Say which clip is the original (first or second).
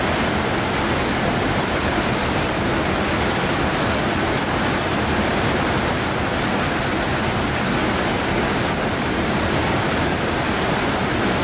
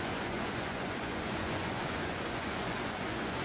first